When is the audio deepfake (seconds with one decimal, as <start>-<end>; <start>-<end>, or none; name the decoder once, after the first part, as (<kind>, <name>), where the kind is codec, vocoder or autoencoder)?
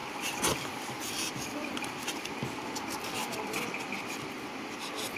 0.0-2.5 (vocoder, BigVGAN v2)